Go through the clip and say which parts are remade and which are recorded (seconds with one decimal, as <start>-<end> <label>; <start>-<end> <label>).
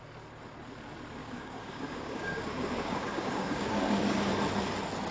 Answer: 0.0-1.2 recorded; 1.2-4.3 remade; 4.3-5.1 recorded